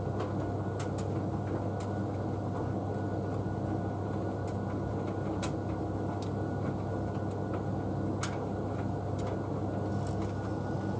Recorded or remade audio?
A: recorded